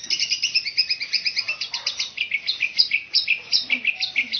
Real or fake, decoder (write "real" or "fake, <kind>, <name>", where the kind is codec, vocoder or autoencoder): real